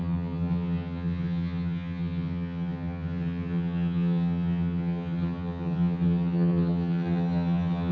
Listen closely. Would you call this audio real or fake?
fake